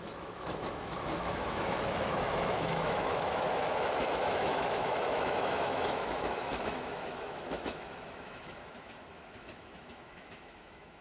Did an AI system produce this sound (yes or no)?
yes